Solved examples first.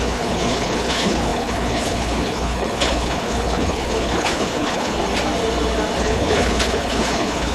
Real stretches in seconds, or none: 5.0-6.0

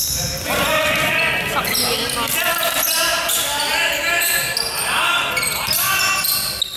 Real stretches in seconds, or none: 0.0-6.8

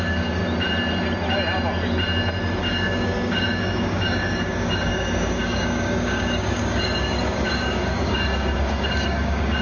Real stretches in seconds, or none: 0.4-2.6

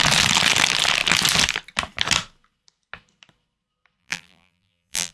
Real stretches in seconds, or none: 0.0-4.0